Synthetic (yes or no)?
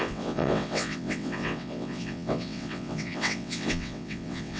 yes